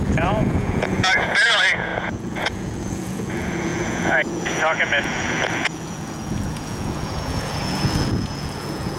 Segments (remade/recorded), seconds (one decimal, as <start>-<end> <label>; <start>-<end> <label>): 0.0-9.0 remade